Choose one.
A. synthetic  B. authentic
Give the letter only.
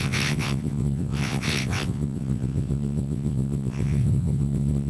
A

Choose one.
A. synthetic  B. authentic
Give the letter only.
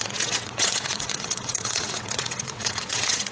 A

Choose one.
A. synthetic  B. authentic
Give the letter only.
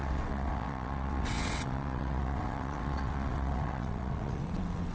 A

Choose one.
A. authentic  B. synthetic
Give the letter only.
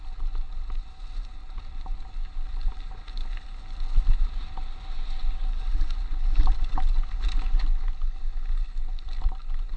A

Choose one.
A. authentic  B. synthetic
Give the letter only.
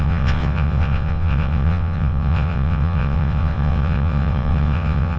B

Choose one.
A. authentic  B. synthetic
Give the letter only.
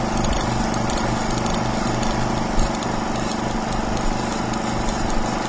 A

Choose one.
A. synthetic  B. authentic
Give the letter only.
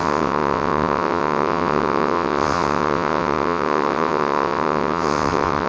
A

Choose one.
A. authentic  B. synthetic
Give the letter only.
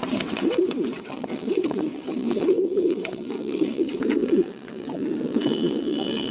B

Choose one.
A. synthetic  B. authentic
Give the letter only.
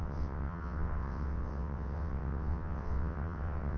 A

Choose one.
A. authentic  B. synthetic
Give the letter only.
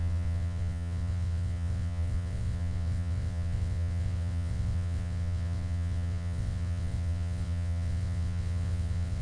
B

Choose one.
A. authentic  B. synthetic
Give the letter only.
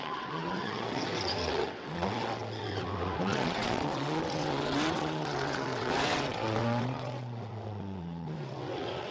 B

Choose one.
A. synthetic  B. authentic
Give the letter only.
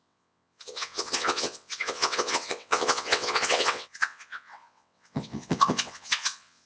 A